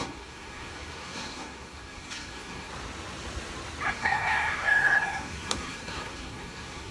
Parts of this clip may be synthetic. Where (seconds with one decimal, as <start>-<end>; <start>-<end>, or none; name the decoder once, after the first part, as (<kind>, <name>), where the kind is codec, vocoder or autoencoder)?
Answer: 0.0-2.7 (codec, SNAC); 3.9-6.9